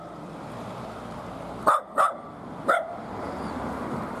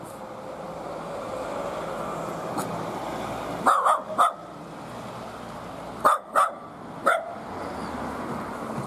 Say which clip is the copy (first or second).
first